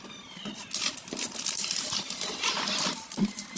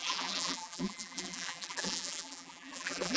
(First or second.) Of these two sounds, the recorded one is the first